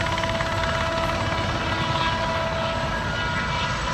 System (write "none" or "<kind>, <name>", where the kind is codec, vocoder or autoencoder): none